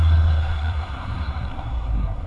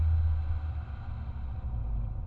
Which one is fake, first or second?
first